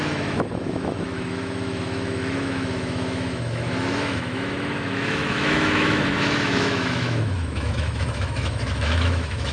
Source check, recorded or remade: remade